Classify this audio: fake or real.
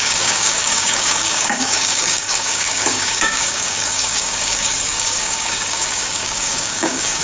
fake